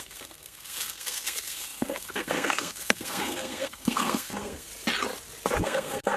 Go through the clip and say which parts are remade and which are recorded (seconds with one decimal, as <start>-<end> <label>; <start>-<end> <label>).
0.0-4.7 remade; 4.7-5.6 recorded; 5.6-6.2 remade